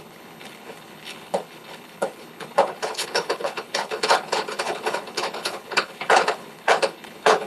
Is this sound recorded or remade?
remade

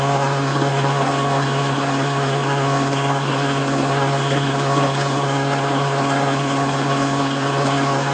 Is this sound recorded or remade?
remade